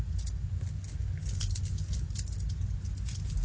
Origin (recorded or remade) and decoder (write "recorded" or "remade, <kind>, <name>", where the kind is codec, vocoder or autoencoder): recorded